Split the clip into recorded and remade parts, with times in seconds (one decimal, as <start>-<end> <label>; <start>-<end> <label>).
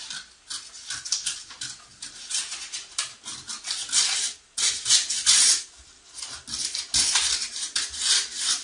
0.0-8.6 recorded